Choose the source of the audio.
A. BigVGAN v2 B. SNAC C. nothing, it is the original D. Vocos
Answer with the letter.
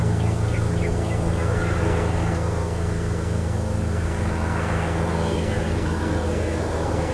B